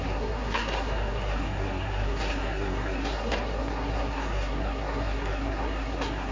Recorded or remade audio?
remade